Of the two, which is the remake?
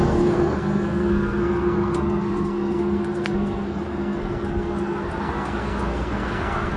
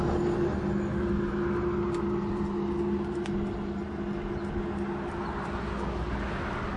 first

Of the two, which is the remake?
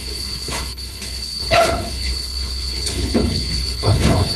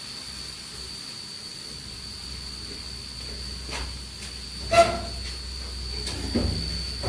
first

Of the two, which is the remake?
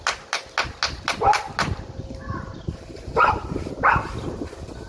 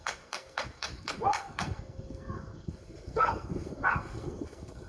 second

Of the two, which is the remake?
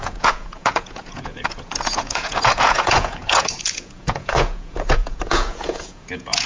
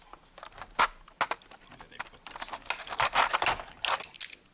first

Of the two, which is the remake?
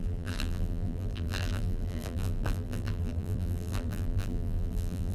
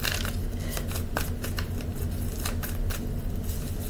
first